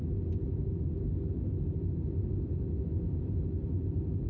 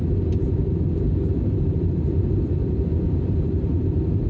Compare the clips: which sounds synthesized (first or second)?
second